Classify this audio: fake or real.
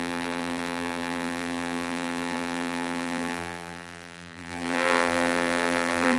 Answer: fake